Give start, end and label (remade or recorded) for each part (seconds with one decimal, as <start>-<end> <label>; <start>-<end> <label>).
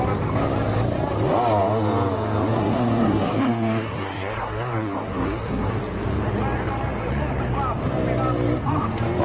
0.0-2.5 recorded; 2.5-5.7 remade; 5.7-9.2 recorded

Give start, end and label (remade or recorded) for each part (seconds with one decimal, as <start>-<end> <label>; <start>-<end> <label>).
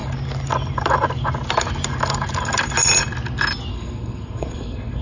0.0-3.7 recorded; 3.7-5.0 remade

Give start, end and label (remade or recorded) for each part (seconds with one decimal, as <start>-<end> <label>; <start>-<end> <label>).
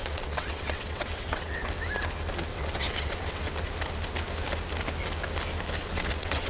0.0-1.7 remade; 1.7-2.5 recorded; 2.5-3.5 remade; 3.5-5.8 recorded; 5.8-6.5 remade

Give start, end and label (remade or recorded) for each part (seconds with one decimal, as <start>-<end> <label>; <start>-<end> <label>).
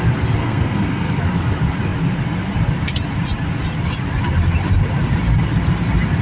0.0-0.4 recorded; 0.4-1.2 remade; 1.2-6.2 recorded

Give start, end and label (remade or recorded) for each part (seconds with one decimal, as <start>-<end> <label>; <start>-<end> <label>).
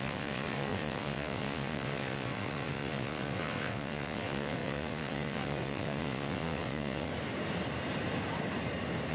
0.0-7.1 remade; 7.1-9.1 recorded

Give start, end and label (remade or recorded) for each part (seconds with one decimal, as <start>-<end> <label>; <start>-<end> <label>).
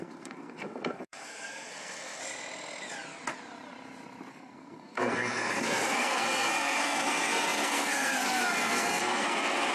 0.0-2.2 remade; 2.2-4.3 recorded; 4.3-9.7 remade